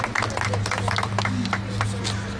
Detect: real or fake real